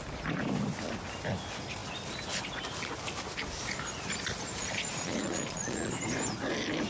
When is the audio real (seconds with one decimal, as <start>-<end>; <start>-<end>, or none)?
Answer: 0.0-4.6; 5.9-6.9